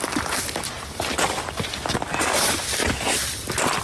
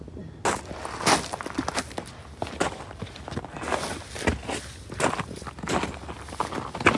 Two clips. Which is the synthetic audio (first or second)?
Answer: first